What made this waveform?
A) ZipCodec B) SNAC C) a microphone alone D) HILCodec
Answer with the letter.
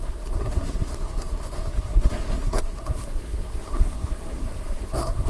B